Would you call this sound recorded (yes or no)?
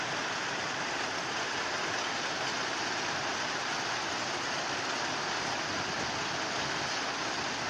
yes